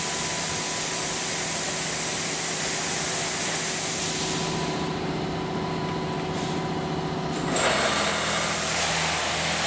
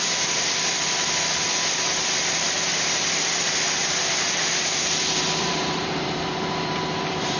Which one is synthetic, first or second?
second